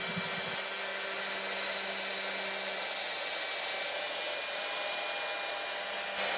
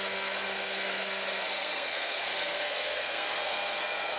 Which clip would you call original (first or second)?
first